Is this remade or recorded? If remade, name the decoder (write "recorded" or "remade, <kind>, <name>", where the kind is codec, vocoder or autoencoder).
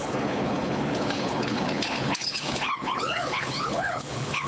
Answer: remade, codec, HILCodec